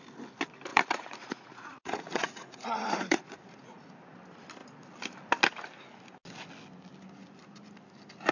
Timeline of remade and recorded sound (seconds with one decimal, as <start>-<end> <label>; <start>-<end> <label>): 0.0-0.7 recorded; 0.7-3.8 remade; 3.8-8.3 recorded